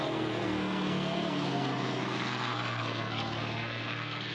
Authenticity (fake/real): fake